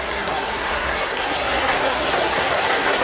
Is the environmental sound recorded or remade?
remade